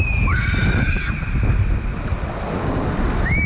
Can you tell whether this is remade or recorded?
recorded